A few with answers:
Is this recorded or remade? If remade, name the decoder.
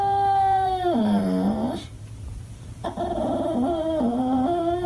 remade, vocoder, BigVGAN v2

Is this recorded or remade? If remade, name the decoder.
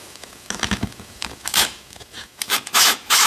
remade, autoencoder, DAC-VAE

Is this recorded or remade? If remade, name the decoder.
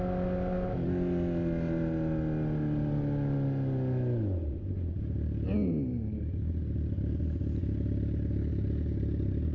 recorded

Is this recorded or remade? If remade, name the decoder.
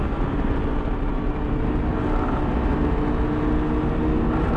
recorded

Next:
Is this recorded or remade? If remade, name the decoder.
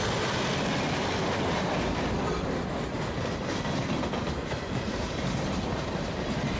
recorded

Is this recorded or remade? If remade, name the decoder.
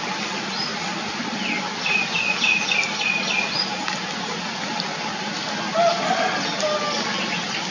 recorded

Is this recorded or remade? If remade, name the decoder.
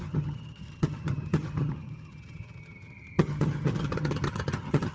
remade, vocoder, HiFi-GAN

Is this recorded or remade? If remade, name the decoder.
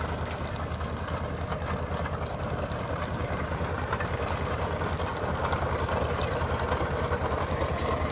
remade, vocoder, BigVGAN v2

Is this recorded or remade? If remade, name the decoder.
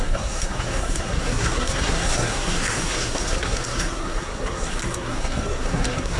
remade, codec, SNAC